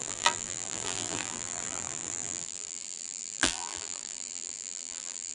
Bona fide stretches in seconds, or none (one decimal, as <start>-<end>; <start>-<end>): none